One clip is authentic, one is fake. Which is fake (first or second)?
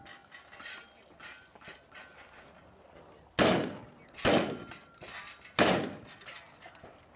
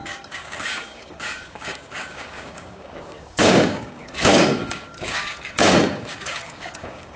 second